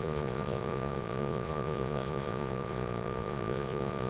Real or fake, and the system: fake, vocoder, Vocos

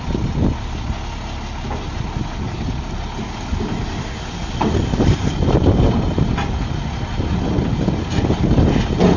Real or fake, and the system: real